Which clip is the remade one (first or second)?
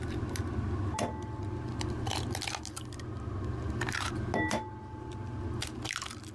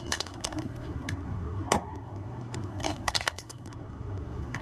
second